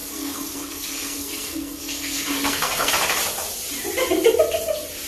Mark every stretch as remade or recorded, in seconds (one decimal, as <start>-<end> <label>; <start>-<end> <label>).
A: 0.0-2.9 remade; 2.9-5.1 recorded